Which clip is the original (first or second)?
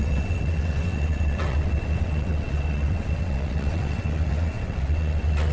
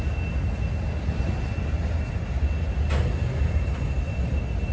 second